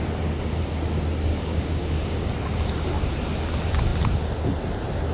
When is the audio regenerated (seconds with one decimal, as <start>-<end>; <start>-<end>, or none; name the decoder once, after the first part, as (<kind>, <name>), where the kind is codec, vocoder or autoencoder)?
1.3-2.3 (codec, DAC)

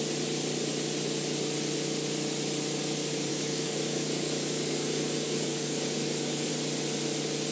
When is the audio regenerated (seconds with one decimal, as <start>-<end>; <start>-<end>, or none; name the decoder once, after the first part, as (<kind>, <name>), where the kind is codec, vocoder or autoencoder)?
3.3-6.5 (codec, DAC)

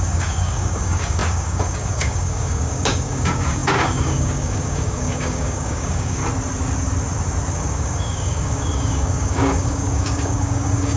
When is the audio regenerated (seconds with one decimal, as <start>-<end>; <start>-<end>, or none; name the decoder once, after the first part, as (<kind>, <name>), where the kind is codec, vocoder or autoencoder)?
0.0-6.2 (codec, DAC); 7.5-11.0

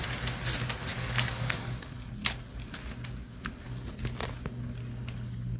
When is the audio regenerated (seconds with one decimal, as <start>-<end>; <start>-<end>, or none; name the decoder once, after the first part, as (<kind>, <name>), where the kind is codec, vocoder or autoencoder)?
0.9-1.9 (codec, DAC)

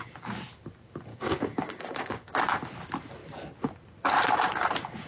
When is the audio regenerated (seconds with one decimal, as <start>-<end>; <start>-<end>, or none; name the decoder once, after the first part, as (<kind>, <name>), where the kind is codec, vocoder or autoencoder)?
1.1-2.3 (codec, DAC)